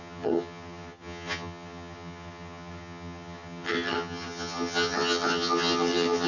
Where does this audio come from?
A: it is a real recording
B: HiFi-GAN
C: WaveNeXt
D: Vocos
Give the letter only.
B